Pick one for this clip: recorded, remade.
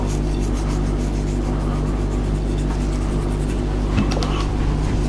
recorded